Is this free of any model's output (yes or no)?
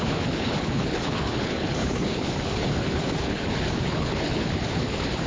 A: no